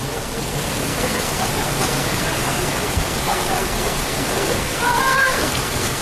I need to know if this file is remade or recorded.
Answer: remade